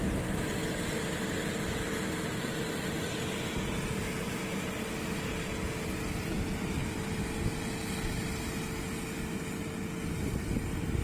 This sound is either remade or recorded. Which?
recorded